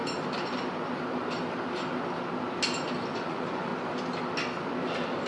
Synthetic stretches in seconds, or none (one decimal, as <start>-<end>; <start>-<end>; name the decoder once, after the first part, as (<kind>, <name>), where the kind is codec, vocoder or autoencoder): 3.1-3.7 (vocoder, Vocos)